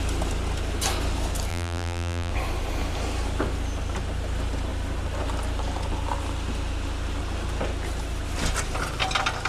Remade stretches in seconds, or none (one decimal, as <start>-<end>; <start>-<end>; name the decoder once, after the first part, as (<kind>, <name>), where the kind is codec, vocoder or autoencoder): 1.5-2.3 (vocoder, BigVGAN v2)